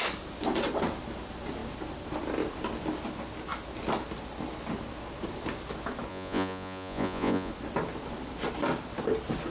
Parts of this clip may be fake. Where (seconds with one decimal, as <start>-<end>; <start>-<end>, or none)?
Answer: 6.1-7.5